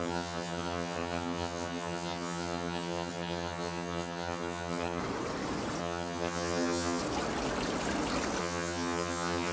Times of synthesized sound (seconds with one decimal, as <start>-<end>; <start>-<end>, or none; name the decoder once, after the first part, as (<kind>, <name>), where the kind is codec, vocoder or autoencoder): 0.0-5.0 (vocoder, HiFi-GAN); 5.8-7.0; 8.4-9.5